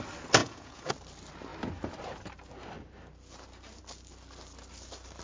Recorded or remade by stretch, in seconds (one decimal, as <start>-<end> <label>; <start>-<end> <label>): 0.0-0.4 recorded; 0.4-0.9 remade; 0.9-5.2 recorded